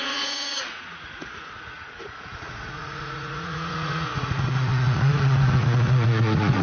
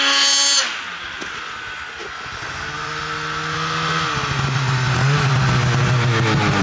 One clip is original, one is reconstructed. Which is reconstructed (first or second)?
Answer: first